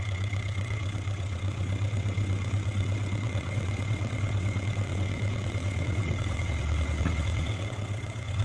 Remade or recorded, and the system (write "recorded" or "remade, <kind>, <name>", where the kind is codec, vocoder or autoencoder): remade, vocoder, WaveNeXt